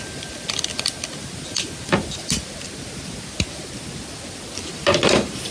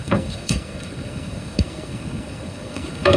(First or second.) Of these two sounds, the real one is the first